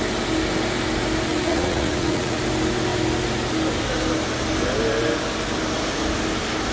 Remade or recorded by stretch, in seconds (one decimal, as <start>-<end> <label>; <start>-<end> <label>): 0.0-1.3 recorded; 1.3-2.4 remade; 2.4-6.7 recorded